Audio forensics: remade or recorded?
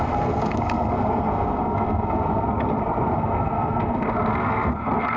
remade